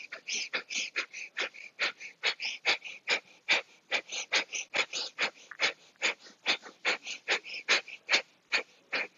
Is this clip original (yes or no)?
yes